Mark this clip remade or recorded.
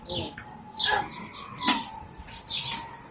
recorded